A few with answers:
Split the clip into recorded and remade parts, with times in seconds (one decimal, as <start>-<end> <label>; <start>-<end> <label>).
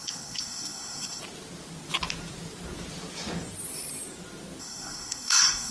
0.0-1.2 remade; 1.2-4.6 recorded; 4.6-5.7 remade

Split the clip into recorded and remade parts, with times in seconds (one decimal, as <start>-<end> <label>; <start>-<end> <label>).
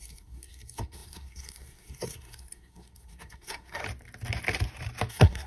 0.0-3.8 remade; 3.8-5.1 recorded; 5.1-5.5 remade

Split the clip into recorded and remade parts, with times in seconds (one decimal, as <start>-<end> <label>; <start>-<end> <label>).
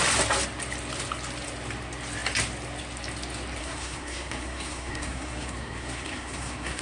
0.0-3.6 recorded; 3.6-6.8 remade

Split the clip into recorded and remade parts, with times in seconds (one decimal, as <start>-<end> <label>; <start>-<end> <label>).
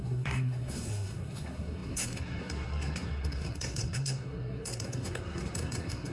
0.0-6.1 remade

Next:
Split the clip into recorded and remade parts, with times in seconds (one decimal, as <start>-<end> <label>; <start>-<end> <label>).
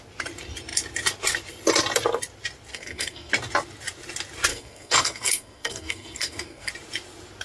0.0-2.7 recorded; 2.7-3.3 remade; 3.3-4.5 recorded; 4.5-6.7 remade; 6.7-7.4 recorded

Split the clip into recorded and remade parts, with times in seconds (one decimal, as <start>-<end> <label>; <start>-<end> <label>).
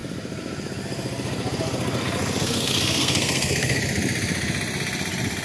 0.0-2.4 recorded; 2.4-3.8 remade; 3.8-5.4 recorded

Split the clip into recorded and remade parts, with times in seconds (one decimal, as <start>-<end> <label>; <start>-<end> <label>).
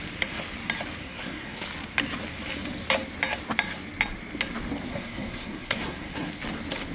0.0-1.0 recorded; 1.0-1.6 remade; 1.6-4.9 recorded; 4.9-6.3 remade; 6.3-6.9 recorded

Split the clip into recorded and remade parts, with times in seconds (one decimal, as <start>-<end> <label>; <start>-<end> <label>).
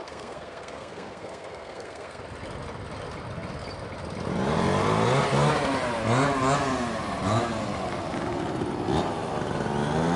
0.0-2.2 remade; 2.2-10.2 recorded